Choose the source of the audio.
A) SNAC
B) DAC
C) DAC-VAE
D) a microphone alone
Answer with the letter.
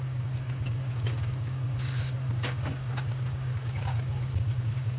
B